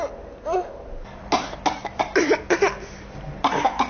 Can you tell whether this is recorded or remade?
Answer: recorded